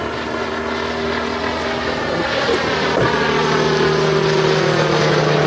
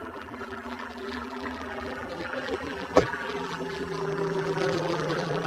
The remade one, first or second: second